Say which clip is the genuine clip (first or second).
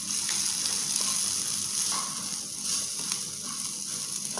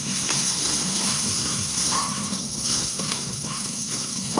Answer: first